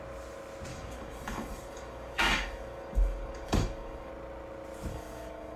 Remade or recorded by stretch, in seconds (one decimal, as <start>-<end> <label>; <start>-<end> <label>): 0.0-0.7 recorded; 0.7-4.1 remade; 4.1-4.9 recorded; 4.9-5.6 remade